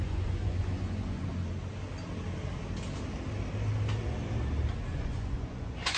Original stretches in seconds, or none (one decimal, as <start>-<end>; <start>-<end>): 1.3-4.9